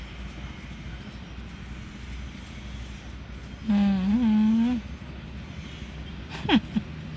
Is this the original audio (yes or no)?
yes